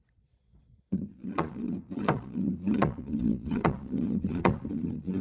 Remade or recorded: remade